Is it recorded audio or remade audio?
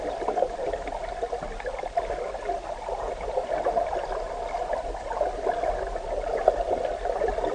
recorded